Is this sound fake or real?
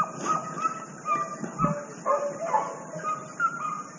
real